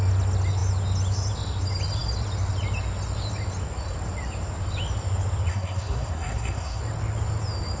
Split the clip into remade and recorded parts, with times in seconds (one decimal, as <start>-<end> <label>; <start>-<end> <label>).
0.0-5.5 recorded; 5.5-6.8 remade; 6.8-7.8 recorded